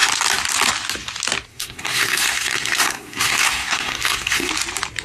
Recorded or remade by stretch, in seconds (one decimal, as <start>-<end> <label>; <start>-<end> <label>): 0.0-1.5 recorded; 1.5-4.5 remade; 4.5-5.0 recorded